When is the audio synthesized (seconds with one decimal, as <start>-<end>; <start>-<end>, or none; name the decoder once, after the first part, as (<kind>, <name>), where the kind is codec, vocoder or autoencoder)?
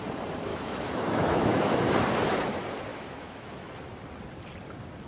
0.5-1.8 (autoencoder, DAC-VAE); 2.9-3.7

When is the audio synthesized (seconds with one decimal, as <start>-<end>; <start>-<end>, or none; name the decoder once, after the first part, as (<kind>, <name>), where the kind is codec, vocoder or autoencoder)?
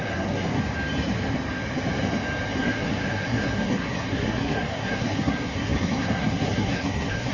0.0-0.6 (codec, SNAC); 2.6-7.3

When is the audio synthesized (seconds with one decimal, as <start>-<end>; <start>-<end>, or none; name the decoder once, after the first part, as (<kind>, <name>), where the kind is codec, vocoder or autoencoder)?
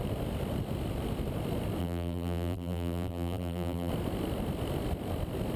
1.8-3.9 (vocoder, BigVGAN v2)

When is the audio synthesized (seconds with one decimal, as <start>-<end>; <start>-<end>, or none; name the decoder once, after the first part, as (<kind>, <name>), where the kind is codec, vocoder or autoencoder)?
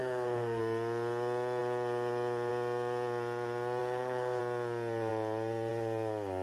0.0-0.6 (codec, SNAC); 3.8-4.4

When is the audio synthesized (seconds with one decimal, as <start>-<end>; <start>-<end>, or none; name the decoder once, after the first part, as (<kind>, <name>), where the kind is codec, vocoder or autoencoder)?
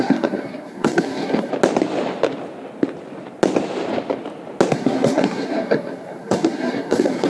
0.0-1.5 (codec, SNAC); 4.7-7.3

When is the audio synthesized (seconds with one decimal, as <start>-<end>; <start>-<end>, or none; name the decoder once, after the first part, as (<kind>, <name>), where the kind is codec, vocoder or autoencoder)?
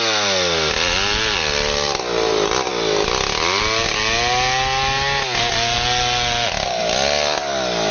none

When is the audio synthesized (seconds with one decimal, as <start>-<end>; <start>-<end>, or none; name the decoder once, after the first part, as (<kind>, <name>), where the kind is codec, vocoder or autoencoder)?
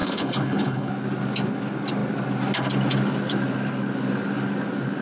0.0-0.9 (codec, HILCodec)